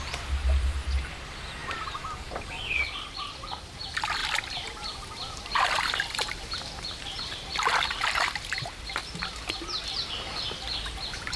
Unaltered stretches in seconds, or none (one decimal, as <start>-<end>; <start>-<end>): 0.0-1.6; 3.5-4.2; 9.5-11.4